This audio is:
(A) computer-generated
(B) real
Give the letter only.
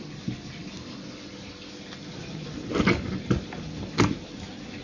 B